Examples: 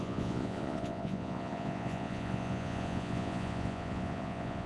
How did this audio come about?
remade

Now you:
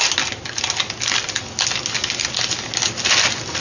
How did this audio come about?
recorded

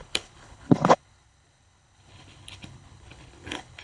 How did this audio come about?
remade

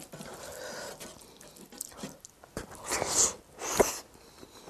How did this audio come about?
recorded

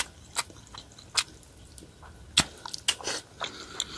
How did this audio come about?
recorded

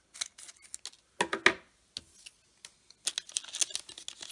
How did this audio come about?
recorded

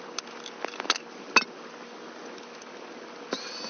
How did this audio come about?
recorded